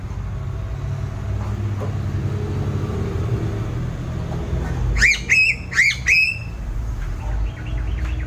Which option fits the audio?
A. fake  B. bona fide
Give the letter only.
B